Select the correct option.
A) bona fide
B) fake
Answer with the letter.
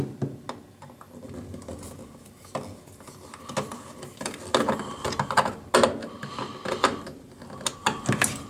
A